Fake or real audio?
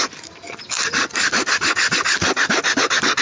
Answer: real